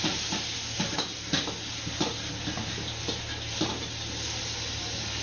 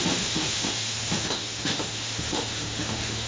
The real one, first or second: first